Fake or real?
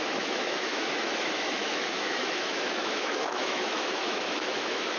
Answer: fake